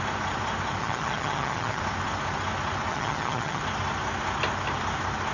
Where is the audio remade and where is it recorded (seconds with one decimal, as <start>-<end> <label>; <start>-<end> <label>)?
0.0-0.8 recorded; 0.8-1.8 remade; 1.8-2.9 recorded; 2.9-3.6 remade; 3.6-5.3 recorded